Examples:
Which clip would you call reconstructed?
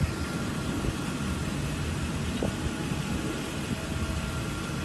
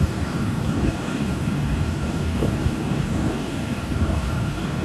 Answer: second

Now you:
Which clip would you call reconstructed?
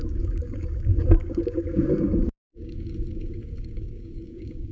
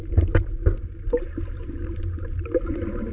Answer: first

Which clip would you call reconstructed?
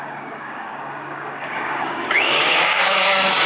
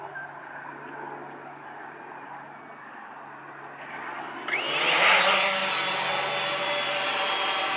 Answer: first